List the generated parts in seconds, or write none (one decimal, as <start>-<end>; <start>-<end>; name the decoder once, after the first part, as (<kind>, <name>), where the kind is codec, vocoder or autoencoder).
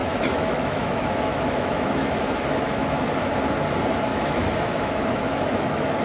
0.0-3.0 (autoencoder, DAC-VAE); 4.1-6.0